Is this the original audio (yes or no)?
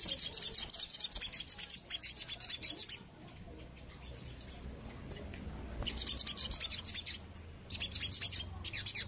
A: yes